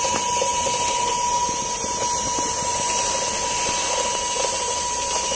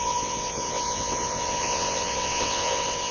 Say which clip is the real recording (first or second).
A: first